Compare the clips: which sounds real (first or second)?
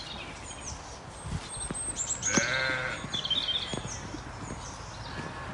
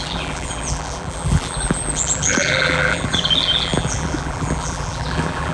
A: first